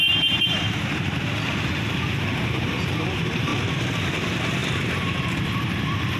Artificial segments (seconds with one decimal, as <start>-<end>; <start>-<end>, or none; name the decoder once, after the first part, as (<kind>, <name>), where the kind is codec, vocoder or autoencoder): 0.0-3.5 (vocoder, BigVGAN v2); 4.1-6.2